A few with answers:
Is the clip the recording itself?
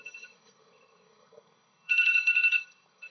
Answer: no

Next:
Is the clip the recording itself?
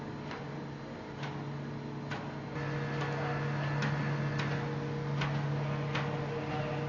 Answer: yes